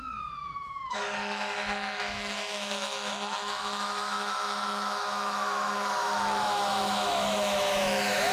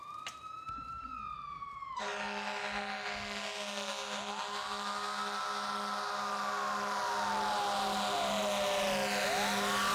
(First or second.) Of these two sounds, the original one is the second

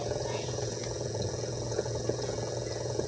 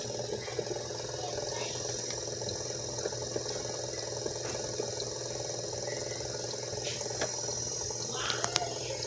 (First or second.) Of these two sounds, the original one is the second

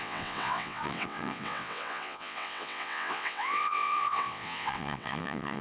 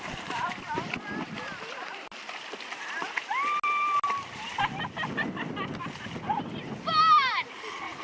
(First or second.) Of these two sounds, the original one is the second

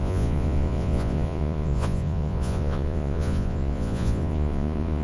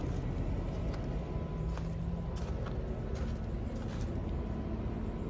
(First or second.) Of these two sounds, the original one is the second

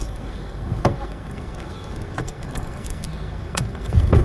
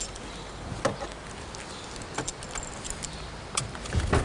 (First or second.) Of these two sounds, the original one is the second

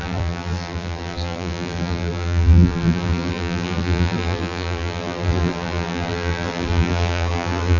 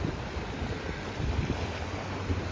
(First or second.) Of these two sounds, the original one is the second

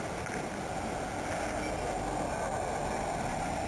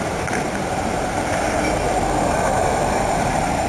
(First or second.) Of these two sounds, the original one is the first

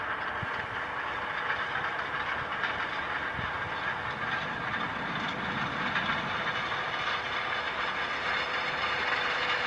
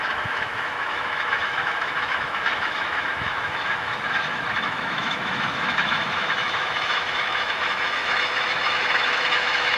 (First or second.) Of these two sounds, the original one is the first